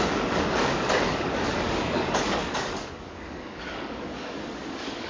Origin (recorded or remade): remade